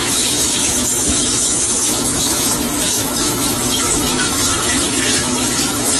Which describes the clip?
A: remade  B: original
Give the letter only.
A